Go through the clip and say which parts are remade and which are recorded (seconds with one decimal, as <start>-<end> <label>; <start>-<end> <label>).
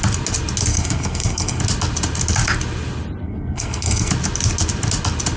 0.0-0.7 recorded; 0.7-1.6 remade; 1.6-3.2 recorded; 3.2-4.1 remade; 4.1-5.4 recorded